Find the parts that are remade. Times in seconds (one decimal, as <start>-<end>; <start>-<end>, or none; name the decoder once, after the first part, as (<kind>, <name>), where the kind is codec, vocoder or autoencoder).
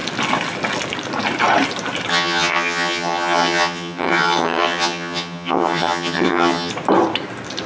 2.1-6.7 (vocoder, HiFi-GAN)